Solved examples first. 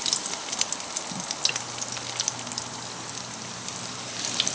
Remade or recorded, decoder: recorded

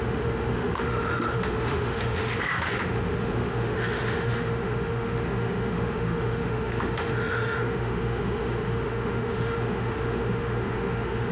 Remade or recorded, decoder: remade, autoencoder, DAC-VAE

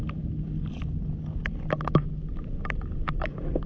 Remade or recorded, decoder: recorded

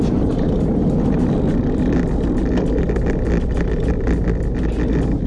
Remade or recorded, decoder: recorded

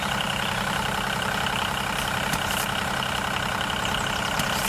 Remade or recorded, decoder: remade, vocoder, BigVGAN v2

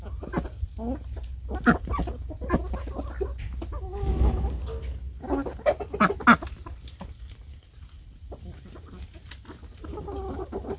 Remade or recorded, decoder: recorded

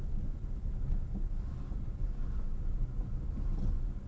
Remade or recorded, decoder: recorded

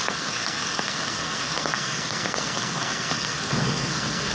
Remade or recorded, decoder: remade, codec, SNAC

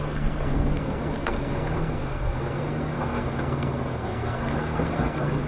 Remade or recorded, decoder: remade, codec, SNAC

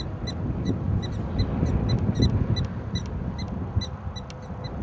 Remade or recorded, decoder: recorded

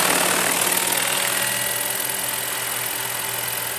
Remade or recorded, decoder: recorded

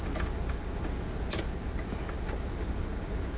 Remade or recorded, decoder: recorded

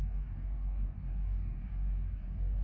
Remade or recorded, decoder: remade, codec, DAC